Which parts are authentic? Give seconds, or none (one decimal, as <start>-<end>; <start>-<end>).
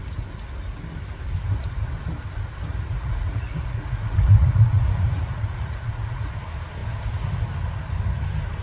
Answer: 0.0-2.7; 6.3-8.6